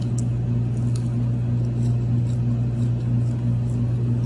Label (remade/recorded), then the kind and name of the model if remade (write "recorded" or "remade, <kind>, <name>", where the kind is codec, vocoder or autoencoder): recorded